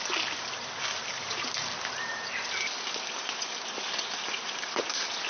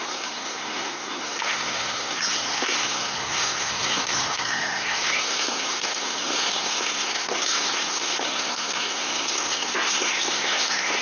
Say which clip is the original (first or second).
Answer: first